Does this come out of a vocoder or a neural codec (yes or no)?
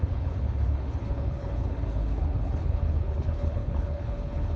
yes